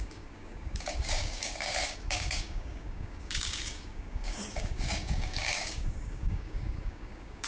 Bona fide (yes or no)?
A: no